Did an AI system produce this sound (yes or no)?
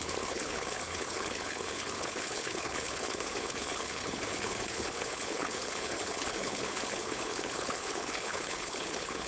yes